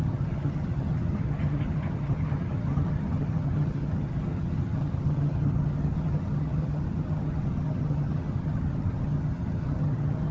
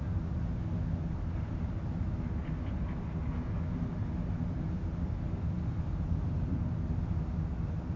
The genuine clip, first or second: second